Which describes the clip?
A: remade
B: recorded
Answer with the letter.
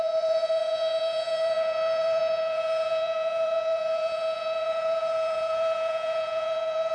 A